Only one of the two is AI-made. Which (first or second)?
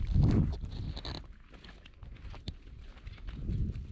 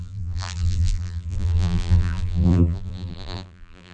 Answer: second